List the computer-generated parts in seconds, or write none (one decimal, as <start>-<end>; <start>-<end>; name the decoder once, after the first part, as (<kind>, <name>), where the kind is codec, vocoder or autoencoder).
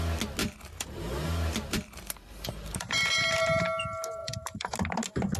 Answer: 0.4-3.6 (vocoder, BigVGAN v2); 4.2-4.7